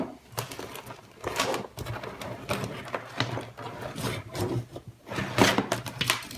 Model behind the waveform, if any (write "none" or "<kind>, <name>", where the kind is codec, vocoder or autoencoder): none